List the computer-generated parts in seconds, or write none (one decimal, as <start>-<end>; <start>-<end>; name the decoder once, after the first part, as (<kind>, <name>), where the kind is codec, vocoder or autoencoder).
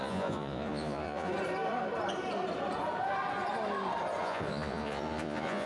0.0-1.3 (vocoder, Vocos); 4.2-5.7